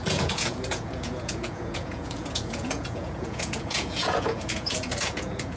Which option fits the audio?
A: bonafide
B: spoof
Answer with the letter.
B